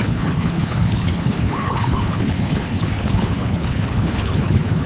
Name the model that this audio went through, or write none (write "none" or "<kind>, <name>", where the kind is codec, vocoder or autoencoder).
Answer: codec, HILCodec